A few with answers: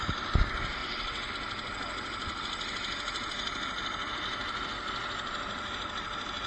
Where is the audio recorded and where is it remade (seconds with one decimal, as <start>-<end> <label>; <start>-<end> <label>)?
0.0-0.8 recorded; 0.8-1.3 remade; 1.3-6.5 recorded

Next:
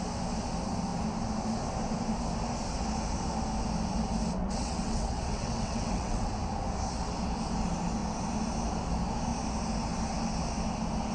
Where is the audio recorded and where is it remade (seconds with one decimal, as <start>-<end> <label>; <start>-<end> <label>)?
0.0-4.4 recorded; 4.4-6.3 remade; 6.3-11.1 recorded

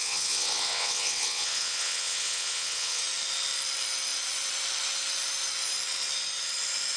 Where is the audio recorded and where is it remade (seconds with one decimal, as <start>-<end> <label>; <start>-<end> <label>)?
0.0-3.0 remade; 3.0-7.0 recorded

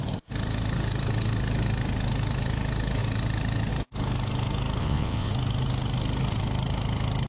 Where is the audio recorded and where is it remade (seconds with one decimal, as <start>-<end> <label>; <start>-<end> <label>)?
0.0-4.8 recorded; 4.8-5.3 remade; 5.3-7.3 recorded

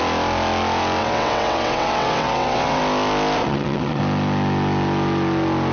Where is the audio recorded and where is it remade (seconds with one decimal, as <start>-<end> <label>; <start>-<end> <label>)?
0.0-1.0 recorded; 1.0-2.8 remade; 2.8-3.4 recorded; 3.4-4.0 remade; 4.0-5.7 recorded